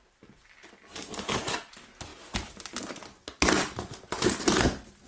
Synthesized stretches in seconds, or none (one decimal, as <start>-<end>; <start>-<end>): none